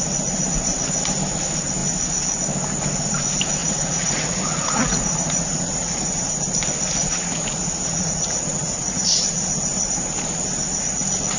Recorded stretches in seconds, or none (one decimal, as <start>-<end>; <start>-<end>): 0.0-3.6; 6.4-7.0; 9.1-11.4